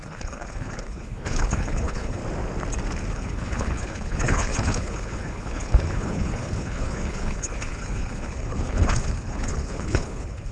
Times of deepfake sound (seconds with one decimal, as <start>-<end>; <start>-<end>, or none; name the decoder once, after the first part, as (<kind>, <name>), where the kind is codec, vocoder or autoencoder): 0.0-2.2 (codec, HILCodec); 3.1-10.5